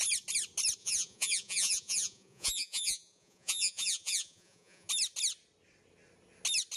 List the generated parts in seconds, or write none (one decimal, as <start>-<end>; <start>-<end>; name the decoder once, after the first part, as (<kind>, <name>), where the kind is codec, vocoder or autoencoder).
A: 0.8-4.9 (vocoder, Vocos)